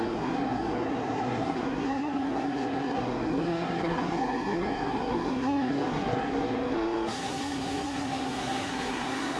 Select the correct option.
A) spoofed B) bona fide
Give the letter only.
A